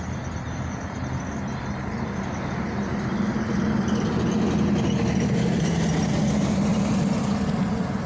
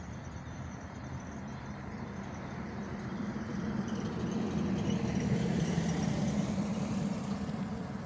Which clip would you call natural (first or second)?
first